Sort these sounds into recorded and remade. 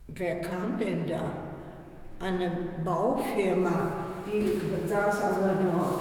remade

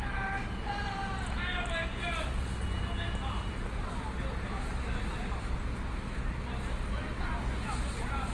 recorded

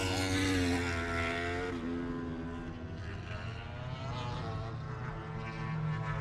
recorded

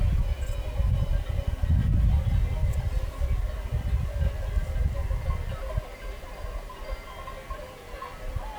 recorded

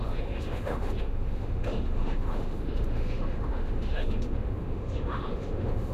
remade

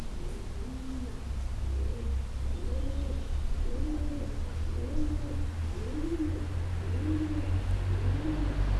recorded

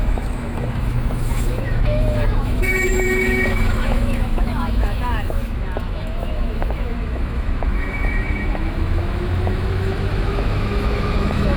remade